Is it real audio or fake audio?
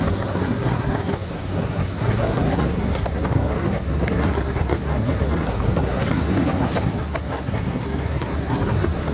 fake